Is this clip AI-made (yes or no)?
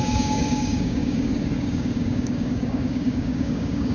yes